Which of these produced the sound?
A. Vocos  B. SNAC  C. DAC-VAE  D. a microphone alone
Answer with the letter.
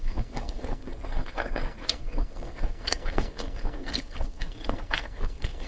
B